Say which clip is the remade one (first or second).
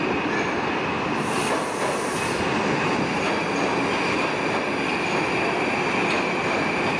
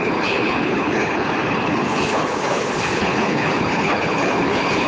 second